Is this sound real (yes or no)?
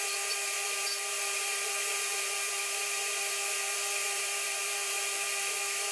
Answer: no